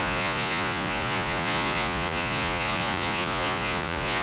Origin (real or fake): fake